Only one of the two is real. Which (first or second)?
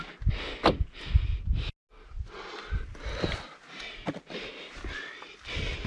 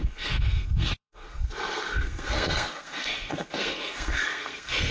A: first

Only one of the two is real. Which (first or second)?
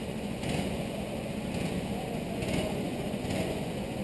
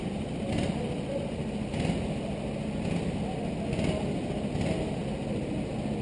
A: second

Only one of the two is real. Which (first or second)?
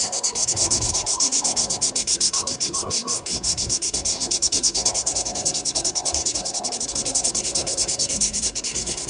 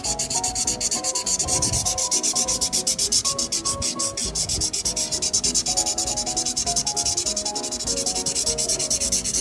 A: second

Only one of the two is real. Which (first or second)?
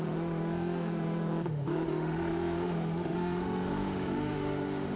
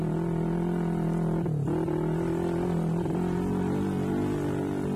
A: second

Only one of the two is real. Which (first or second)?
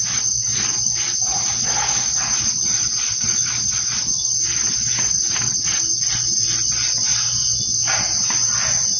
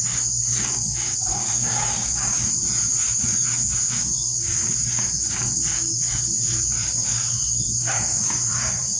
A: first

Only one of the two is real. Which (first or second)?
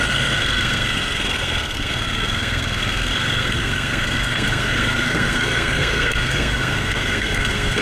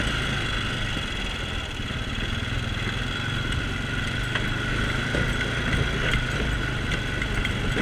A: second